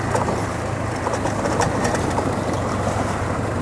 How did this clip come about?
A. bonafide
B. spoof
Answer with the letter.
B